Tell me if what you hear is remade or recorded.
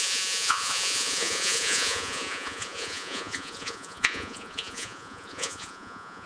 remade